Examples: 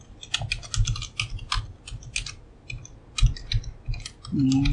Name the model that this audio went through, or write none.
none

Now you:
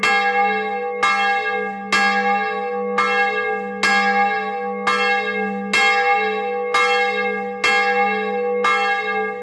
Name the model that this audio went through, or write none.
none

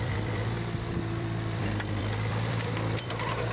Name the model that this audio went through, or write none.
vocoder, BigVGAN v2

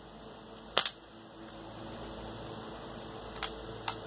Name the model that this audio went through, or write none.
vocoder, BigVGAN v2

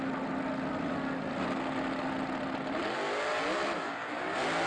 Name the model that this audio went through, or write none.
none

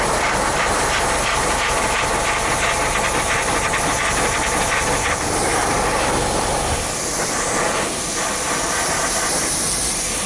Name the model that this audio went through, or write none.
vocoder, BigVGAN v2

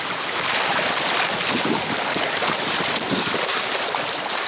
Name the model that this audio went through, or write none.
none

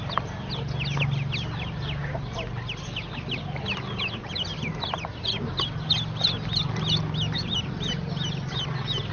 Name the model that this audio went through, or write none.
none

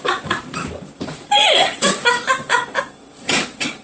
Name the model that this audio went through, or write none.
vocoder, BigVGAN v2